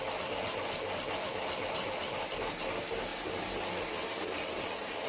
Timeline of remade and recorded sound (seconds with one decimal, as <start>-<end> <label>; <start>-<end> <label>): 0.0-5.1 recorded